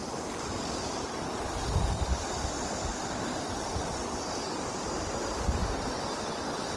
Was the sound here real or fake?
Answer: real